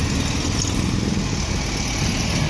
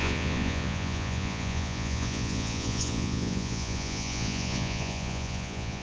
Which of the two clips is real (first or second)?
first